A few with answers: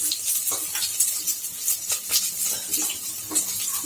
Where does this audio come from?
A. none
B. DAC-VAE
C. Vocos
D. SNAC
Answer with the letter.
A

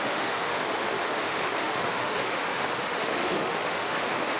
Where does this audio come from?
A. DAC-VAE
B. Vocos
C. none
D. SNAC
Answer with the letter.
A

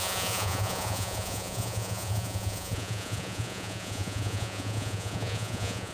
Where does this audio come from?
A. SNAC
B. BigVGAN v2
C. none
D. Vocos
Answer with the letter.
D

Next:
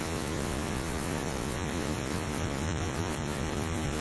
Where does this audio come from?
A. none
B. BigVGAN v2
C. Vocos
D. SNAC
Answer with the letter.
C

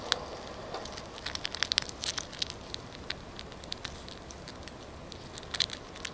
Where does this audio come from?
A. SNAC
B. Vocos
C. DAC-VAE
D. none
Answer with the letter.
D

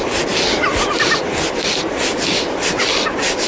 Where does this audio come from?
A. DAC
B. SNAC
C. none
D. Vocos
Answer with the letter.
C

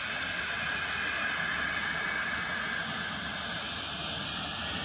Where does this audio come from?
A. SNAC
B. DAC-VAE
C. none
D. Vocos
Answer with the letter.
C